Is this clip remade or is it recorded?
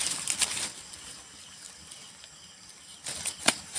recorded